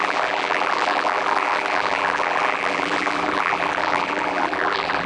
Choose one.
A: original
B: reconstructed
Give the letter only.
B